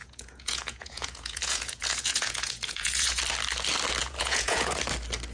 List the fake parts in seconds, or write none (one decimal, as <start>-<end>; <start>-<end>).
0.0-3.2; 4.0-4.8